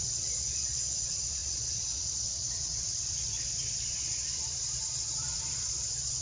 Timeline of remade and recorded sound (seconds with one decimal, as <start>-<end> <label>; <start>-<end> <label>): 0.0-6.2 remade